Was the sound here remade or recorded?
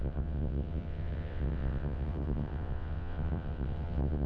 remade